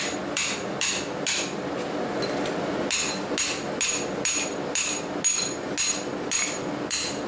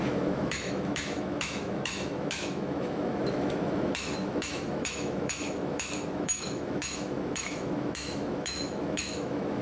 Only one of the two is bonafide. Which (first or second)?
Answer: first